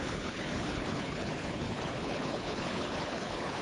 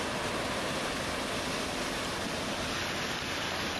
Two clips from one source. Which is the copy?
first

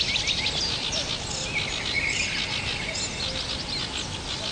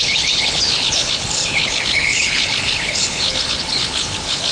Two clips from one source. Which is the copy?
second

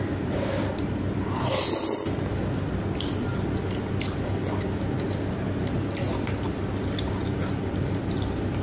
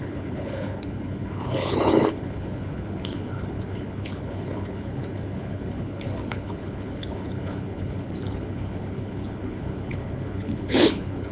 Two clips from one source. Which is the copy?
second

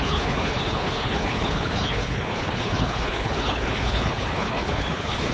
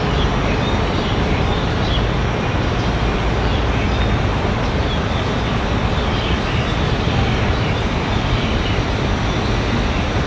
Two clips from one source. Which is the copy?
first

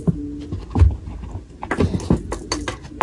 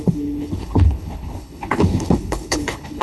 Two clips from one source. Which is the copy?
second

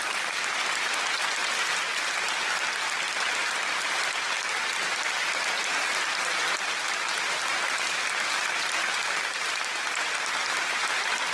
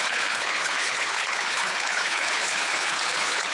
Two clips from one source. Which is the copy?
second